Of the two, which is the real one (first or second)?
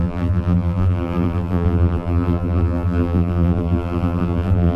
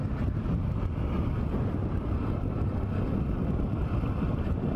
second